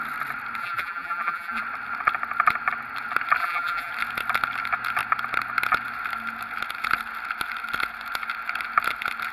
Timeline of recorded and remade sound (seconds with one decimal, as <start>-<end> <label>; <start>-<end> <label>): 0.0-0.6 recorded; 0.6-1.6 remade; 1.6-3.4 recorded; 3.4-3.9 remade; 3.9-9.3 recorded